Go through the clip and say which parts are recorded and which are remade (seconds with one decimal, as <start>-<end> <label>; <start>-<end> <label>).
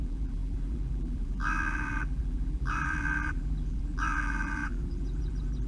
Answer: 0.0-5.7 remade